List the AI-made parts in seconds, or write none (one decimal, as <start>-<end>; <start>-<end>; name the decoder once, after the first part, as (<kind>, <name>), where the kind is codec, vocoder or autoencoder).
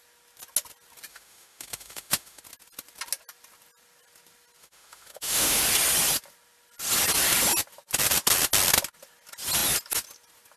1.1-2.4 (autoencoder, DAC-VAE); 4.6-5.6